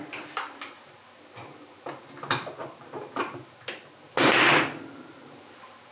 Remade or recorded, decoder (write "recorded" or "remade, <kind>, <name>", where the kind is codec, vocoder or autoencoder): recorded